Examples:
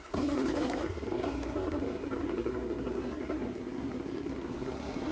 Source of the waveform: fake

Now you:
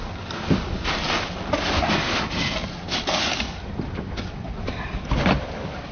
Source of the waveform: real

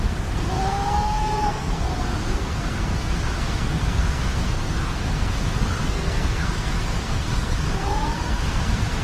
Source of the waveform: fake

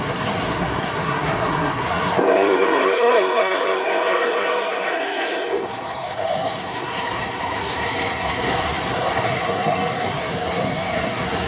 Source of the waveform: fake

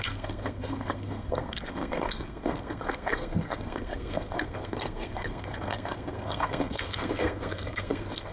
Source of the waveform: fake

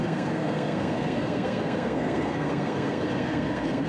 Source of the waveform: fake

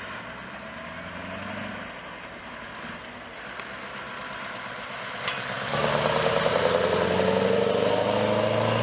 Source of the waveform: real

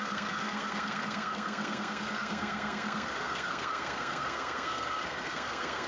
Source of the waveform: fake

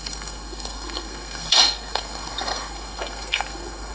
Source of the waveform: fake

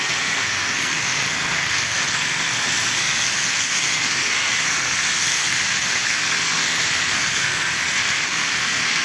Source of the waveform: fake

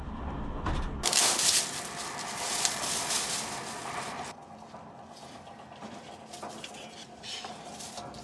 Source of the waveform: real